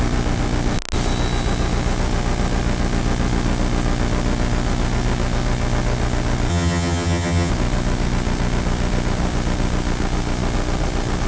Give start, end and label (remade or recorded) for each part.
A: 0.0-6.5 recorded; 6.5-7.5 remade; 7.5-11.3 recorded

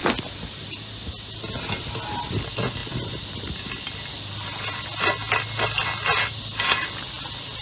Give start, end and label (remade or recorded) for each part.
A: 0.0-7.6 recorded

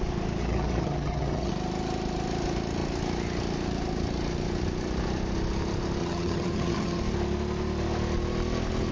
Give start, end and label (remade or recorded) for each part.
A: 0.0-0.4 recorded; 0.4-1.5 remade; 1.5-6.0 recorded; 6.0-7.0 remade; 7.0-8.9 recorded

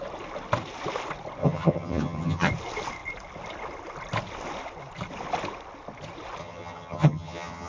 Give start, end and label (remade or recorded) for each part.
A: 0.0-1.4 recorded; 1.4-2.5 remade; 2.5-6.4 recorded; 6.4-7.7 remade

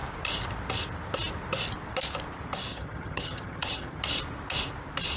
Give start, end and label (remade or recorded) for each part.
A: 0.0-2.7 recorded; 2.7-4.0 remade; 4.0-5.2 recorded

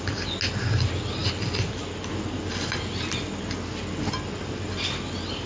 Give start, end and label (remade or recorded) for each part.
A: 0.0-5.5 recorded